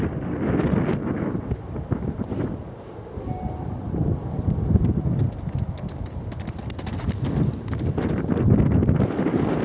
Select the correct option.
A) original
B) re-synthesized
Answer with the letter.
A